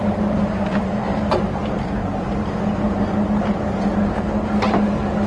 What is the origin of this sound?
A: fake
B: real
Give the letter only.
B